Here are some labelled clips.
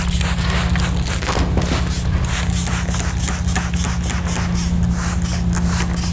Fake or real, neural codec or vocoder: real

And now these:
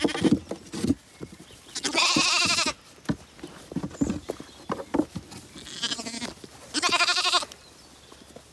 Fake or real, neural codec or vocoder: real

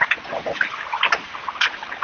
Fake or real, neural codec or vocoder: real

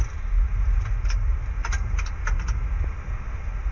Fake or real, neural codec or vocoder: real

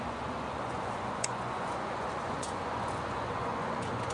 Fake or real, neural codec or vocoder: fake, vocoder, Vocos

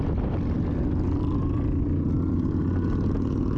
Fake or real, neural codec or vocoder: real